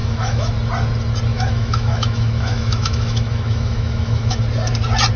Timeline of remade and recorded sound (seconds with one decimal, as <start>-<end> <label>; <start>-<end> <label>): 0.0-0.5 remade; 0.5-1.3 recorded; 1.3-4.4 remade; 4.4-5.2 recorded